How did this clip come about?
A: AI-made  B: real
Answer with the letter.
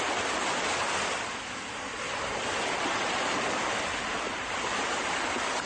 B